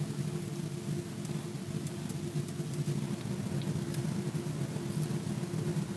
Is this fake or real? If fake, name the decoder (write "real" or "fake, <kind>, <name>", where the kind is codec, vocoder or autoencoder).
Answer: real